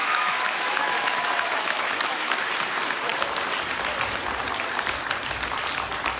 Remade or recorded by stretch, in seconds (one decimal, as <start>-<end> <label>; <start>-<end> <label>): 0.0-2.5 remade; 2.5-6.2 recorded